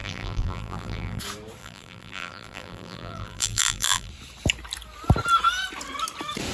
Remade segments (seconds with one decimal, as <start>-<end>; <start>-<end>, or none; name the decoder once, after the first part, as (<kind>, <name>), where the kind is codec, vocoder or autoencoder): 0.0-1.2 (vocoder, BigVGAN v2); 1.6-4.1